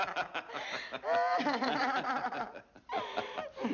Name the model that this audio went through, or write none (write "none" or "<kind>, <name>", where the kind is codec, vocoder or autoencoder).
none